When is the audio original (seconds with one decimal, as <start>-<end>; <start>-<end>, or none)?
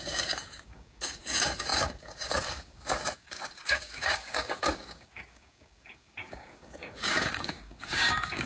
none